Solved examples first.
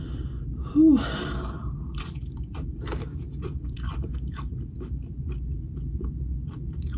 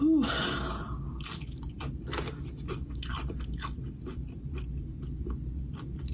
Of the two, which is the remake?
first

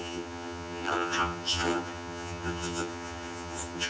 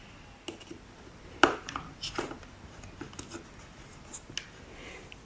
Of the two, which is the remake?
first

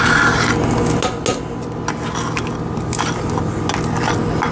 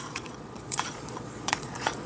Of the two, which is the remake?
second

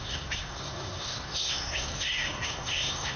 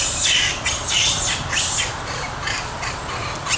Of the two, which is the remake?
first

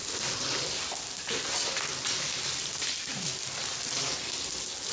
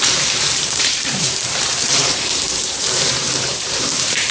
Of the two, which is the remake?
second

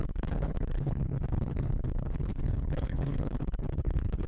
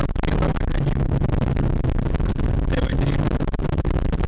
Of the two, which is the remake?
first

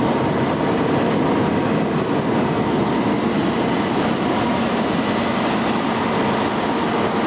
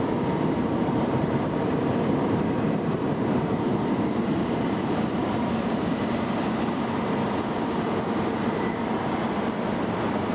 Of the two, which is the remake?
second